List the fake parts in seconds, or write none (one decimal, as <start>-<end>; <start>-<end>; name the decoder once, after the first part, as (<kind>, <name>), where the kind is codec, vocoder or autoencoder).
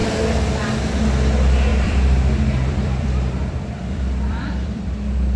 1.7-4.9 (vocoder, BigVGAN v2)